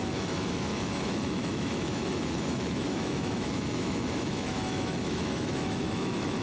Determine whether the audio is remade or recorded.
remade